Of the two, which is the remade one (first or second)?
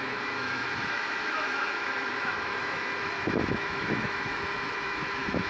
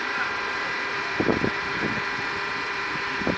first